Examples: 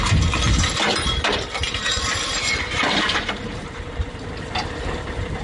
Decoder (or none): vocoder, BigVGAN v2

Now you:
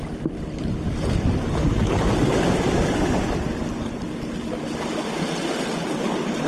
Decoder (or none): none